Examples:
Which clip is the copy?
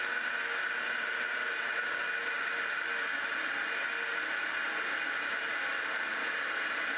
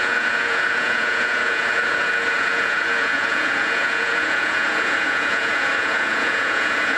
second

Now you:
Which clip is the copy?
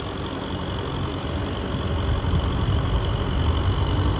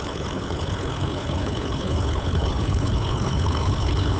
second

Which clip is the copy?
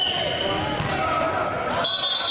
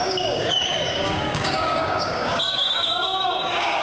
second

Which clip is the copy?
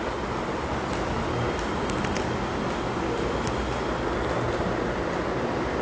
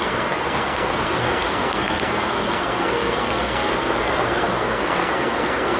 second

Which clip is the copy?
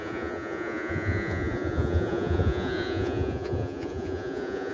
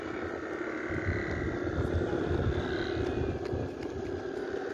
first